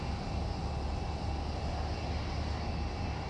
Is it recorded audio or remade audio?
recorded